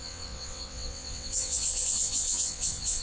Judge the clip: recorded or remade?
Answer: remade